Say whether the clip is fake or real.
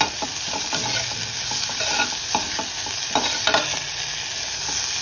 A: real